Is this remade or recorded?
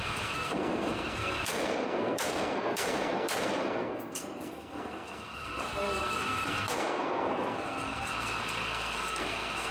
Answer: remade